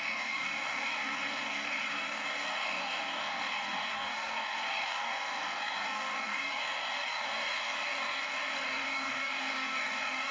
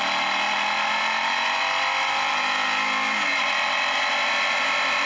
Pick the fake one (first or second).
first